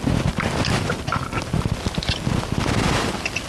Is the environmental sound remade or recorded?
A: recorded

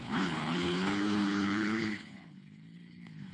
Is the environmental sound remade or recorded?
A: remade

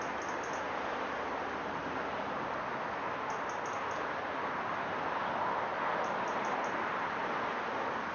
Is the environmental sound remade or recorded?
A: recorded